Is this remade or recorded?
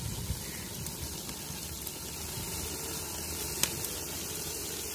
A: recorded